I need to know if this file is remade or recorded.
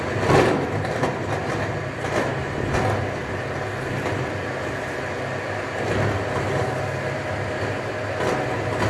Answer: recorded